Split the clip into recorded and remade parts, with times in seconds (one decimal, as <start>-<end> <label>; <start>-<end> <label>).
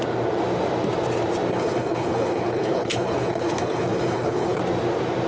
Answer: 0.0-1.5 recorded; 1.5-4.6 remade; 4.6-5.3 recorded